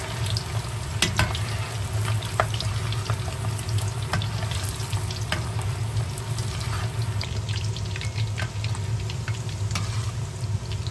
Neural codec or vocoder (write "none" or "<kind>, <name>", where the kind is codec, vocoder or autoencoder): none